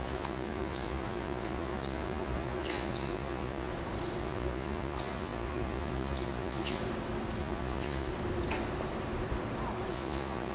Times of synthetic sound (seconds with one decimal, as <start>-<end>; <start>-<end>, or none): 0.0-3.7; 4.2-6.8; 7.4-8.1; 9.9-10.5